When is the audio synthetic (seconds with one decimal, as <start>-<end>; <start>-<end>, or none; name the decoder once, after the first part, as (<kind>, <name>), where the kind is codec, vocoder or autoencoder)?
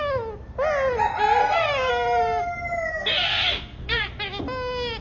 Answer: 1.4-1.9 (codec, SNAC); 2.9-4.1